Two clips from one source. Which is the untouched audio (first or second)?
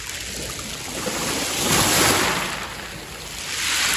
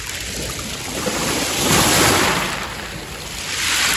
first